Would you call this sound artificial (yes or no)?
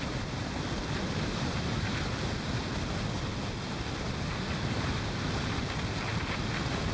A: no